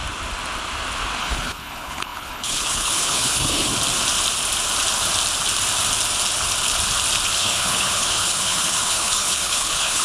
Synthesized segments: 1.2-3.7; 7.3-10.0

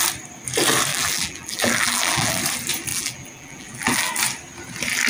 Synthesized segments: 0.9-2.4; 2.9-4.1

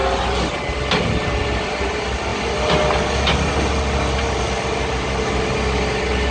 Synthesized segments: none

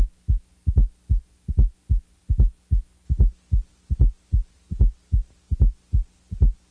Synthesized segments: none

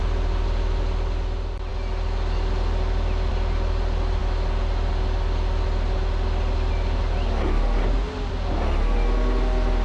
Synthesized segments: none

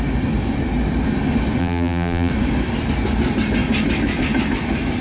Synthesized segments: 1.6-2.3

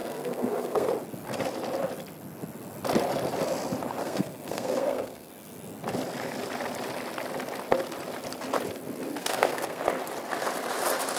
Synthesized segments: 0.0-0.9; 4.0-5.3; 9.2-9.8